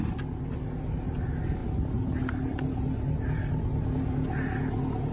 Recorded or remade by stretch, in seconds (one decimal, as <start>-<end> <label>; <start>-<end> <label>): 0.0-5.1 recorded